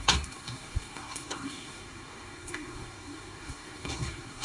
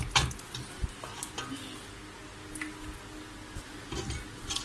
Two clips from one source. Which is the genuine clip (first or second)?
second